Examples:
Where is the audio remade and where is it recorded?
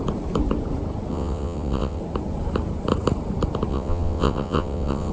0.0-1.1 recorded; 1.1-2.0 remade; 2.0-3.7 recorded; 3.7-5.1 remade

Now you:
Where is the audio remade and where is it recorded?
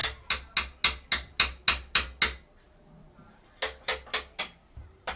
0.0-5.2 recorded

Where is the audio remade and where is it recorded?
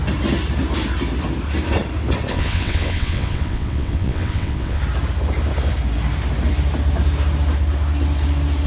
0.0-2.3 recorded; 2.3-4.8 remade; 4.8-8.7 recorded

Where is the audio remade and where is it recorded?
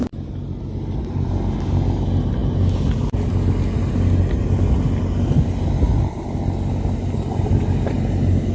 0.0-8.5 recorded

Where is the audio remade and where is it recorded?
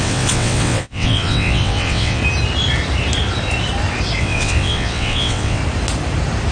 0.0-2.2 remade; 2.2-4.2 recorded; 4.2-5.6 remade; 5.6-6.5 recorded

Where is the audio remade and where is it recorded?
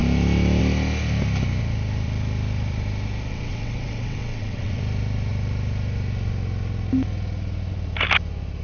0.0-3.3 recorded; 3.3-4.8 remade; 4.8-8.6 recorded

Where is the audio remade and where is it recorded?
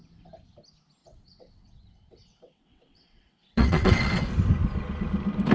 0.0-1.0 recorded; 1.0-4.3 remade; 4.3-5.5 recorded